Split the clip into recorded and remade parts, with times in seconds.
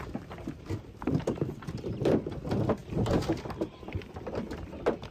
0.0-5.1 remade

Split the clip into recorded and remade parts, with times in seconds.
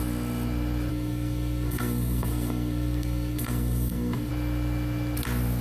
0.0-0.9 recorded; 0.9-4.3 remade; 4.3-5.6 recorded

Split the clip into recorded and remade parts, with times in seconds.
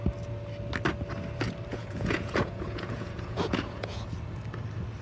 0.0-1.7 recorded; 1.7-3.9 remade; 3.9-5.0 recorded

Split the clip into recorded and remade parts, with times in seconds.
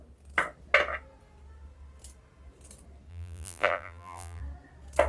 0.0-3.1 recorded; 3.1-4.4 remade; 4.4-5.1 recorded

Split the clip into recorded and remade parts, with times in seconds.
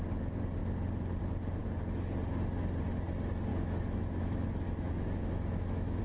0.0-3.5 recorded; 3.5-6.0 remade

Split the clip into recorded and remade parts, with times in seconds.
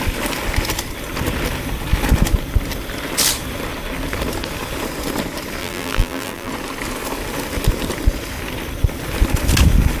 0.0-5.6 recorded; 5.6-6.5 remade; 6.5-10.0 recorded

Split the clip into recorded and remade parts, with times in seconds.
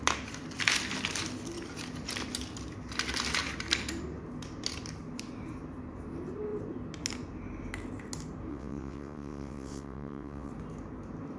0.0-8.5 recorded; 8.5-10.5 remade; 10.5-11.4 recorded